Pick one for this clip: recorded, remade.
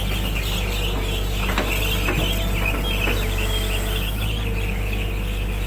recorded